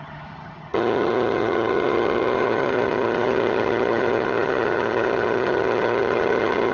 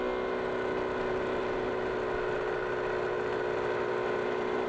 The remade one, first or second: first